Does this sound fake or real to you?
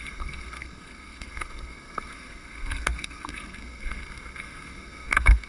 fake